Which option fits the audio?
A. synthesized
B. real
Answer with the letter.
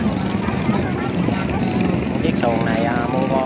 B